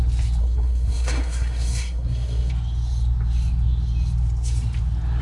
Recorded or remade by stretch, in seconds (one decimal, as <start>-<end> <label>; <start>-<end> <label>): 0.0-0.4 recorded; 0.4-2.5 remade; 2.5-5.2 recorded